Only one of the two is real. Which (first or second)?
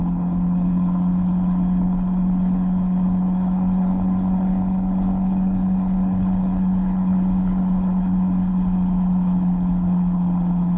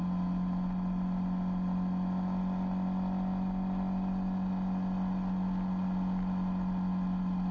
second